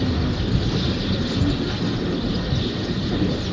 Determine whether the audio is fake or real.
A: real